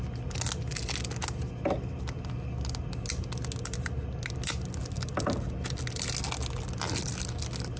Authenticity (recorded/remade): recorded